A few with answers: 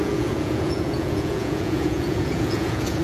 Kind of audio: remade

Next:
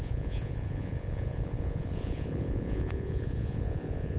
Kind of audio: remade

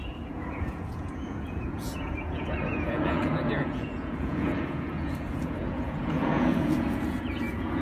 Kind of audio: remade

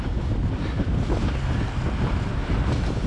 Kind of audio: recorded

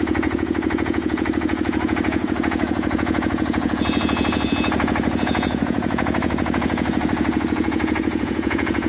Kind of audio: remade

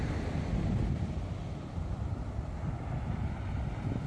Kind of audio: recorded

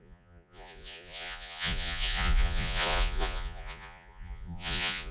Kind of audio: remade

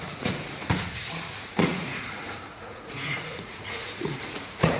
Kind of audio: remade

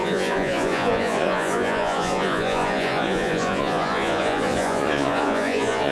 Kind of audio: remade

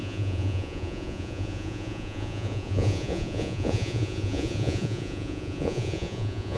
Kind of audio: remade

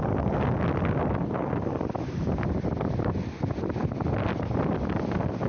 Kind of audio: recorded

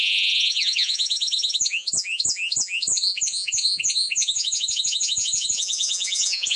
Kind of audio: remade